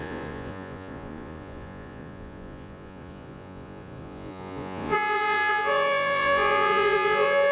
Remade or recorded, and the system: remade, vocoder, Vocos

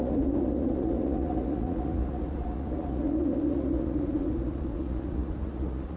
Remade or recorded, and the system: remade, vocoder, Vocos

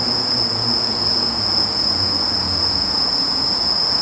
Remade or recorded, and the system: remade, vocoder, Vocos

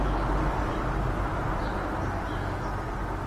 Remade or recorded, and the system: recorded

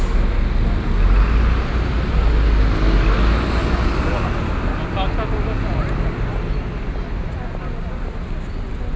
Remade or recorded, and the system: recorded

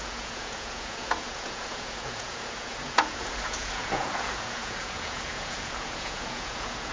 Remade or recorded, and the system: remade, vocoder, Vocos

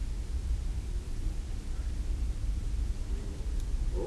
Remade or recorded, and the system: recorded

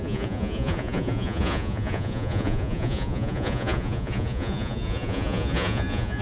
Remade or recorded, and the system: remade, vocoder, Vocos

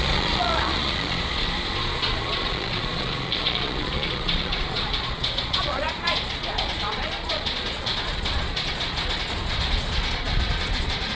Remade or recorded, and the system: remade, vocoder, Vocos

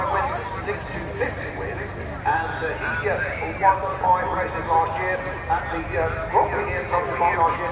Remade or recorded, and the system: recorded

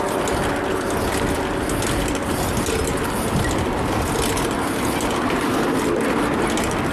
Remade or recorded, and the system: recorded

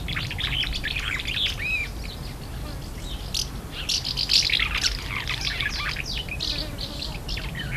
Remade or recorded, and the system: recorded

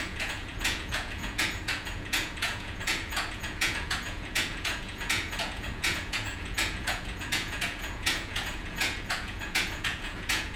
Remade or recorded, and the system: remade, vocoder, Vocos